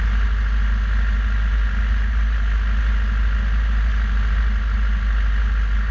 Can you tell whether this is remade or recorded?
recorded